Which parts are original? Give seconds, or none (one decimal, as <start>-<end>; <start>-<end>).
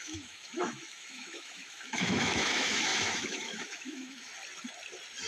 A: 4.3-5.3